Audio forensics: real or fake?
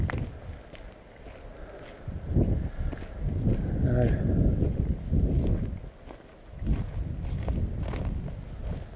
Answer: real